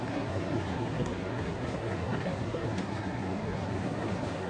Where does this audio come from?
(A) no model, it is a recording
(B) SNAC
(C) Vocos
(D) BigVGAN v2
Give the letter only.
B